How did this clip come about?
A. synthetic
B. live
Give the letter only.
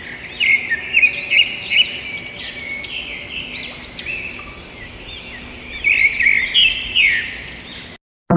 B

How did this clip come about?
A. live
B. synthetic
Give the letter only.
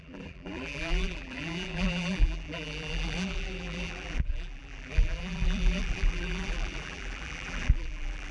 B